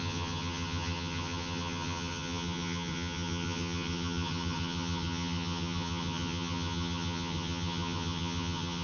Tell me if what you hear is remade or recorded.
remade